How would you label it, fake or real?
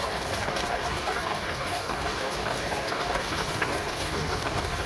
fake